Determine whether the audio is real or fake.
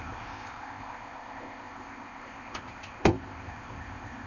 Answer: fake